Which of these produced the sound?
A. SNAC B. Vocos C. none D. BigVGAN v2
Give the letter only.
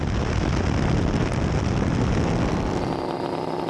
C